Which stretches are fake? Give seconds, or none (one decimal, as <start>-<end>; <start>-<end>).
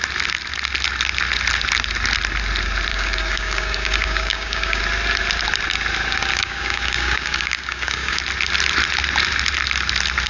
2.9-4.8; 6.3-8.2